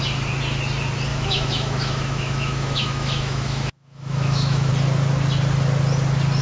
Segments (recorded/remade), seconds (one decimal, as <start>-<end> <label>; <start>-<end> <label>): 0.0-1.1 recorded; 1.1-4.7 remade; 4.7-6.4 recorded